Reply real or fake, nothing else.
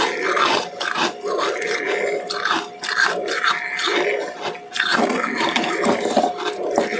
real